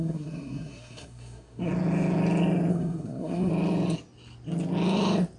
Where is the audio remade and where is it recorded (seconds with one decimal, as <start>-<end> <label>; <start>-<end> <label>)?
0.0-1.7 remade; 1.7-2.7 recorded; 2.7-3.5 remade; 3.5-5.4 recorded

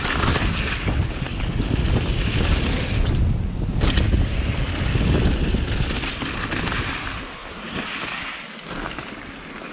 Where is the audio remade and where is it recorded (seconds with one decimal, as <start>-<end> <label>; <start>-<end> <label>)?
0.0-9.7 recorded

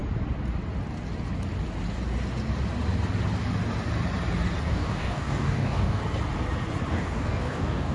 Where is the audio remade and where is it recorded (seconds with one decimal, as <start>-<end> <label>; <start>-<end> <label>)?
0.0-4.6 recorded; 4.6-6.0 remade; 6.0-6.9 recorded; 6.9-7.9 remade

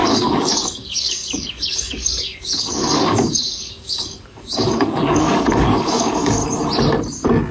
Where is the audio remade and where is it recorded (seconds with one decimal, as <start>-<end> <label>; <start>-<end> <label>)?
0.0-6.4 remade; 6.4-7.5 recorded

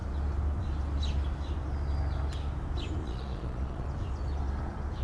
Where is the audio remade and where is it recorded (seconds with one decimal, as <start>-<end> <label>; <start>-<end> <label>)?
0.0-3.0 recorded; 3.0-3.9 remade; 3.9-5.0 recorded

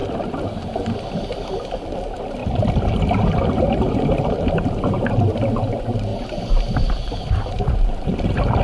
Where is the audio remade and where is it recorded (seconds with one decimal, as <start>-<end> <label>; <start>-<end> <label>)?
0.0-2.4 recorded; 2.4-5.3 remade; 5.3-6.1 recorded; 6.1-8.6 remade

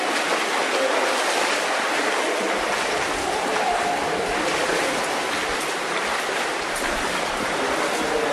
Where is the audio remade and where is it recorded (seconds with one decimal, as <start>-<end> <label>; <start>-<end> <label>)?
0.0-5.8 recorded; 5.8-7.8 remade; 7.8-8.3 recorded